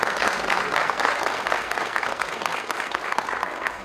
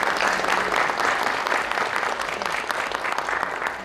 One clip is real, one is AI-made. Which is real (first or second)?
second